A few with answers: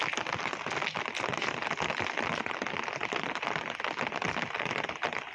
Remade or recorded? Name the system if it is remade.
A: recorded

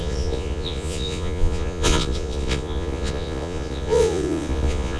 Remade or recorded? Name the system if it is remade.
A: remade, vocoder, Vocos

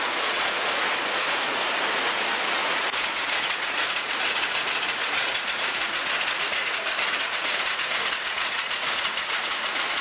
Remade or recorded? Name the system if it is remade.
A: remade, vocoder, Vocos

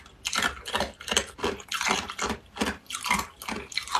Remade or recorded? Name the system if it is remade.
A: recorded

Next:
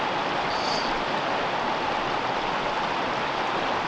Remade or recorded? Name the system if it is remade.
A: recorded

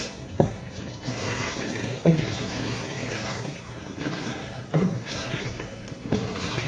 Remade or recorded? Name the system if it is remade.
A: remade, codec, SNAC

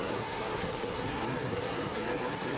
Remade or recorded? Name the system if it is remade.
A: remade, codec, SNAC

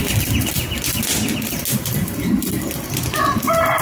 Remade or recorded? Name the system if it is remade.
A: recorded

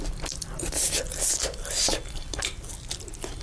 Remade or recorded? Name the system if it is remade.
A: recorded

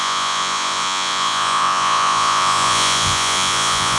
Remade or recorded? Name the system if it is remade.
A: remade, vocoder, Vocos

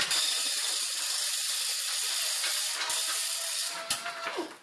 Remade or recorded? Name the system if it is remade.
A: recorded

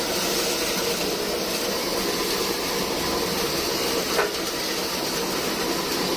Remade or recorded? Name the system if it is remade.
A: recorded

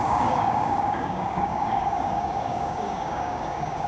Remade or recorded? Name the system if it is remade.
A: remade, codec, DAC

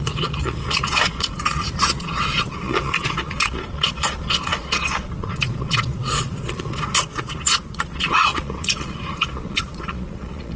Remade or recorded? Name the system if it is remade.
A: remade, vocoder, Vocos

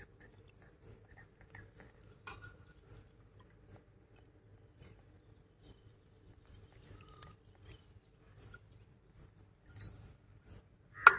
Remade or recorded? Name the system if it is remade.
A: recorded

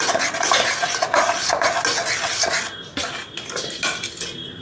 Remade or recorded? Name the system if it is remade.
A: recorded